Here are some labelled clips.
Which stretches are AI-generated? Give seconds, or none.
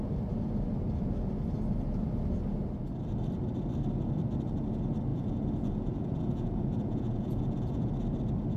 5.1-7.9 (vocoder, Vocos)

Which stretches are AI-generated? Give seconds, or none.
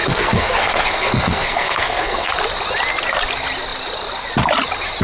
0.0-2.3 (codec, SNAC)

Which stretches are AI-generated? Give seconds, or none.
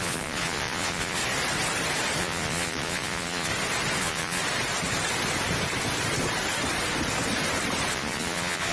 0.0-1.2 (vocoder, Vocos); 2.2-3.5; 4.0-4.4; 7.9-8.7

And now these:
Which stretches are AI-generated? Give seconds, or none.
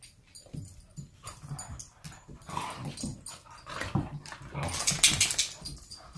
none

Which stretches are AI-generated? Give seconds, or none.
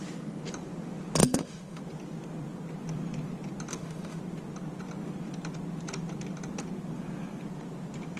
1.2-1.8 (autoencoder, DAC-VAE); 3.7-4.2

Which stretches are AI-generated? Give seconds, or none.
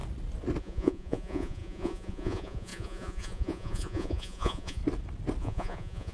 0.6-4.8 (vocoder, Vocos); 5.4-6.1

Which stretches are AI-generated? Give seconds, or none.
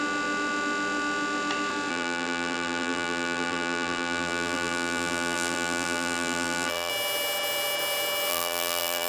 1.9-6.9 (vocoder, BigVGAN v2); 8.3-9.1